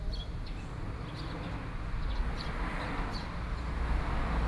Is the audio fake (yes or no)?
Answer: no